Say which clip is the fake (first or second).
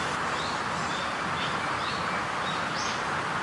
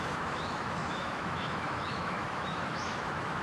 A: second